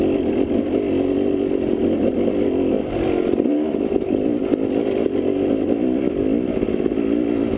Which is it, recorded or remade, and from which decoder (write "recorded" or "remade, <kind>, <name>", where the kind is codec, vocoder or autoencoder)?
recorded